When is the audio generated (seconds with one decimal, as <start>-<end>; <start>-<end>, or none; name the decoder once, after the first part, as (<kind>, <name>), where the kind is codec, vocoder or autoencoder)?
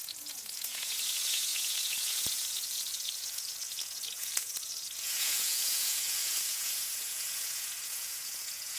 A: 0.0-8.8 (vocoder, Vocos)